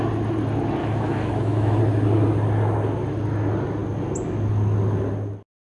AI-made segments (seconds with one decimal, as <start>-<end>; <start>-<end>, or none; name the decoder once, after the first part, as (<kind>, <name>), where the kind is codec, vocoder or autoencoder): 0.8-1.8 (autoencoder, DAC-VAE)